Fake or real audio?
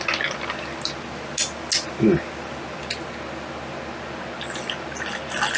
real